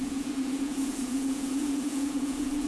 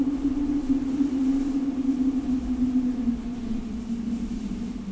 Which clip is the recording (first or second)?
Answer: second